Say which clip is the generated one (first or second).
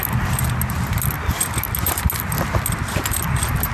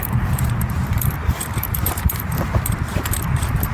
second